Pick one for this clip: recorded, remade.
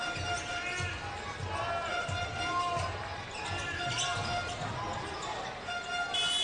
recorded